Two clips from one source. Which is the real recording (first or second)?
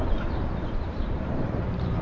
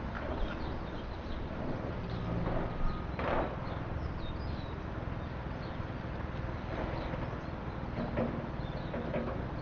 second